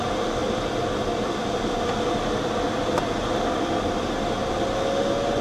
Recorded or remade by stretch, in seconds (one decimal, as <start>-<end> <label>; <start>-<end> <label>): 0.0-5.4 recorded